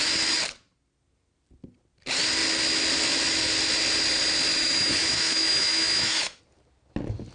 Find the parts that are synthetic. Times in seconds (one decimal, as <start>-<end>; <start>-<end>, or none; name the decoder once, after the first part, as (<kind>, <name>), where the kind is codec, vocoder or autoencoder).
4.5-6.4 (autoencoder, DAC-VAE)